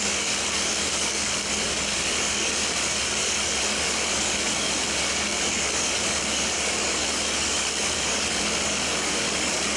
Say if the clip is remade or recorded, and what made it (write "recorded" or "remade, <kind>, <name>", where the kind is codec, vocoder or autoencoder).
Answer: remade, codec, DAC